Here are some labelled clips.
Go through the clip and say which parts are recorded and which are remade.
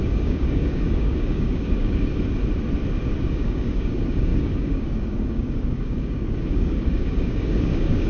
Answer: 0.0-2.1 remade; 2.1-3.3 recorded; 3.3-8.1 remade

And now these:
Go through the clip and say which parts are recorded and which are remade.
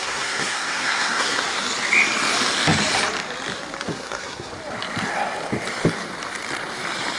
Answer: 0.0-1.4 remade; 1.4-3.9 recorded; 3.9-4.5 remade; 4.5-7.2 recorded